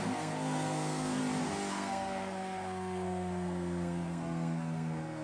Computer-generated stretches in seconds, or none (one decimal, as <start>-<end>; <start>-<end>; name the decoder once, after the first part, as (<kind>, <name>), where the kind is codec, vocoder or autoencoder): 0.0-1.2 (codec, SNAC); 1.7-5.2